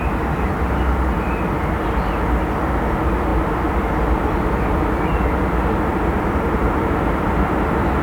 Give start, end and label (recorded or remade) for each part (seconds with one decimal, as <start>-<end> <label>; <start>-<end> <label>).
0.0-6.1 recorded; 6.1-8.0 remade